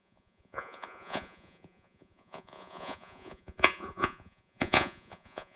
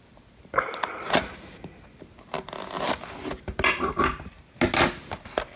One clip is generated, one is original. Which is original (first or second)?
second